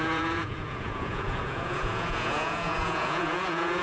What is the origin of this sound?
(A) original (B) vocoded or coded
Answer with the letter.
B